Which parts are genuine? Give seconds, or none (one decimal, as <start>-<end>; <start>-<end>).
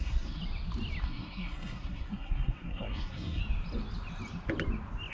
0.4-1.0; 3.4-5.1